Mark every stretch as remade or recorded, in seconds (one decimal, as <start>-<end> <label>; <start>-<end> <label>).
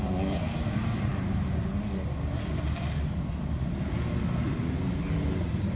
0.0-5.8 recorded